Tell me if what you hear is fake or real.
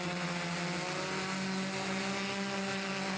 real